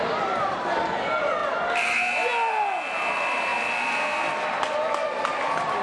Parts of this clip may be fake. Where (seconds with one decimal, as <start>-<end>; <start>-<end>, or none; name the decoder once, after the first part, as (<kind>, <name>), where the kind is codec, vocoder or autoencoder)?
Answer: none